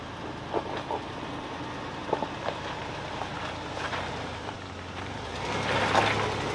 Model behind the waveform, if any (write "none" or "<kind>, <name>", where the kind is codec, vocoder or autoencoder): none